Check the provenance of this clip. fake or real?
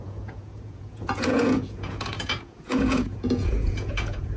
fake